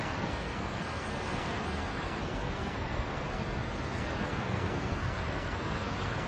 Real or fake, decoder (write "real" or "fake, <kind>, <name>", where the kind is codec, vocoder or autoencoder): fake, codec, SNAC